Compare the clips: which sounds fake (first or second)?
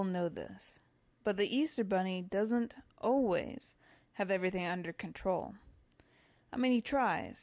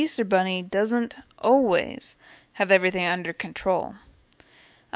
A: second